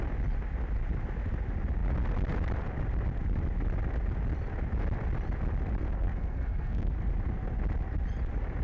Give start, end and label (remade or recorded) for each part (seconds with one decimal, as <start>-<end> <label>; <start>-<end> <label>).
0.0-5.8 recorded; 5.8-7.1 remade; 7.1-8.6 recorded